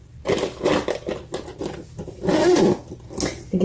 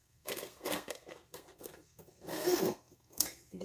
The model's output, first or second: second